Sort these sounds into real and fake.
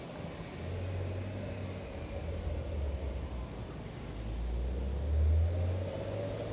real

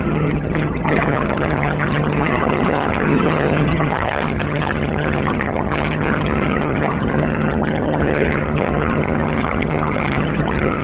fake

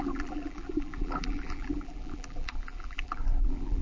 fake